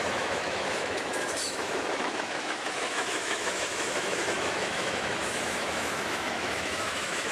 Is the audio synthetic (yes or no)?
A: yes